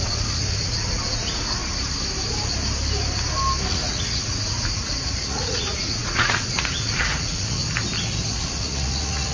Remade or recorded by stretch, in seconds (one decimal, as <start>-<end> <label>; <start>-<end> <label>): 0.0-1.6 remade; 1.6-3.7 recorded; 3.7-7.6 remade; 7.6-8.3 recorded; 8.3-9.3 remade